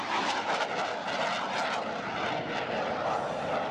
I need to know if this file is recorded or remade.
recorded